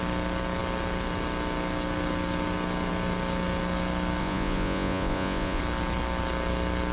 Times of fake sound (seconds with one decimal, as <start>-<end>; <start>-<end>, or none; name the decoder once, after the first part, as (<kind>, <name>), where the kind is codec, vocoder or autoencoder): 4.2-5.6 (vocoder, Vocos)